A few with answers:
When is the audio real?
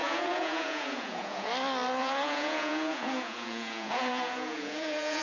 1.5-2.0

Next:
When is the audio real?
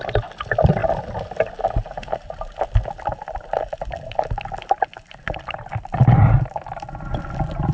0.0-7.7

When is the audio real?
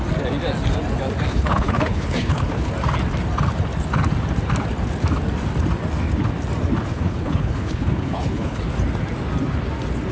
0.0-1.3; 2.7-6.9; 8.6-10.1